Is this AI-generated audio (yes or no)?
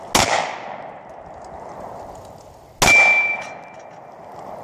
no